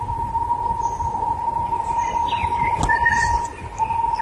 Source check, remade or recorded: recorded